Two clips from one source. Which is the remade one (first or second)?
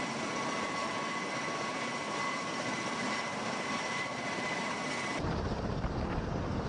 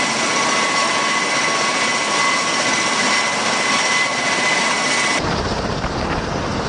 first